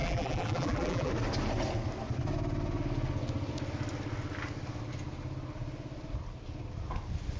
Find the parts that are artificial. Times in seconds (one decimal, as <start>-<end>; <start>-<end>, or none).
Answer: 0.0-1.1